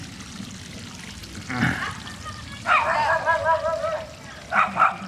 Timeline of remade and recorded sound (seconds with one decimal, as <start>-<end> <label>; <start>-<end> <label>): 0.0-5.1 recorded

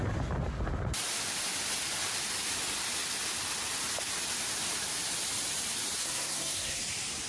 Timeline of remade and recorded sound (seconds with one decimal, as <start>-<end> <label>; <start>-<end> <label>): 0.0-6.0 recorded; 6.0-6.8 remade; 6.8-7.3 recorded

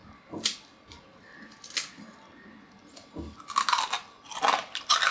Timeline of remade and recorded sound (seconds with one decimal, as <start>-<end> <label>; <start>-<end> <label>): 0.0-5.1 recorded

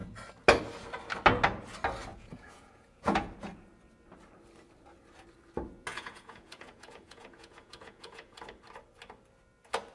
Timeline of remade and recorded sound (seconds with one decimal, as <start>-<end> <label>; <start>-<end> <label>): 0.0-2.1 recorded; 2.1-3.3 remade; 3.3-5.9 recorded; 5.9-8.4 remade; 8.4-9.9 recorded